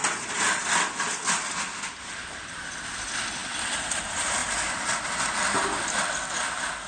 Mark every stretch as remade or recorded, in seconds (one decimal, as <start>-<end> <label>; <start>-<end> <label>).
0.0-6.9 recorded